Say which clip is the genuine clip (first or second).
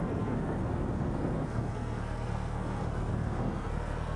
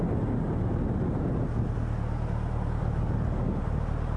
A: second